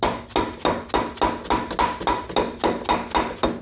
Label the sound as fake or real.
real